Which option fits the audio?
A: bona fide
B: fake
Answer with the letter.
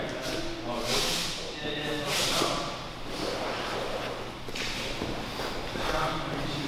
A